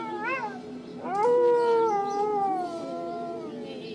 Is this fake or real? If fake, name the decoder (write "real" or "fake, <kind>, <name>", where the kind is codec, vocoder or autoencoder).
real